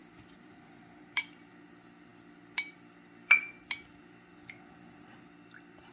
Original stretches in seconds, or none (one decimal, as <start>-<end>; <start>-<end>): 1.5-5.9